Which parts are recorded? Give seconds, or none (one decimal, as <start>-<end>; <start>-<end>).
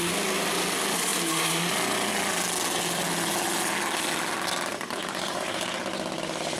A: 0.0-4.7; 5.8-6.6